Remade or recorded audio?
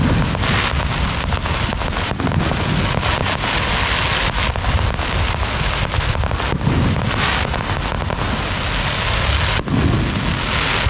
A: recorded